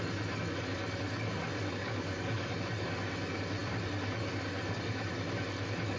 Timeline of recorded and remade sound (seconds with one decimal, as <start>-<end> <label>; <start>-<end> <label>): 0.0-1.8 recorded; 1.8-2.5 remade; 2.5-6.0 recorded